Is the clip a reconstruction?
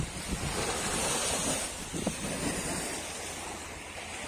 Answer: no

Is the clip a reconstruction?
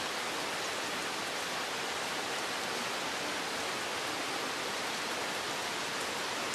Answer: no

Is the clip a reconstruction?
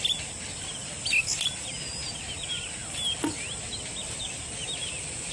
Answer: no